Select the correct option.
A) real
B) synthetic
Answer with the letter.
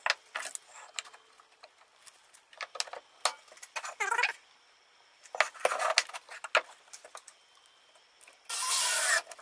A